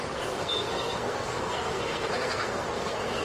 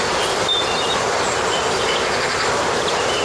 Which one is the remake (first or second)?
first